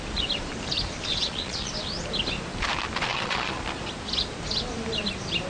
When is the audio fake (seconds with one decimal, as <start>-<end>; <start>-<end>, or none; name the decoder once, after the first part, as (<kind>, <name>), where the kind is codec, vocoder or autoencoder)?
1.1-1.7 (vocoder, Vocos); 3.1-3.6